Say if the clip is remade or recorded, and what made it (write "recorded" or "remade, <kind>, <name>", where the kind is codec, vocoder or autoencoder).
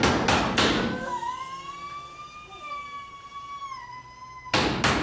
recorded